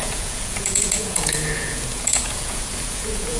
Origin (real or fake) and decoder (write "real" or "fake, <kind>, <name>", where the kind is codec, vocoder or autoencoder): fake, vocoder, Vocos